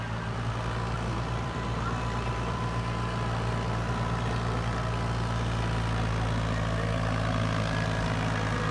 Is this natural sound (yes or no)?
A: no